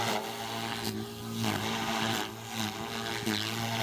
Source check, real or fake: real